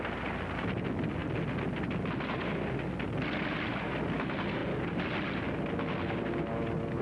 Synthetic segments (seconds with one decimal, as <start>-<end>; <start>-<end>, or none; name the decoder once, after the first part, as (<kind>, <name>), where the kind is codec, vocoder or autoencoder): none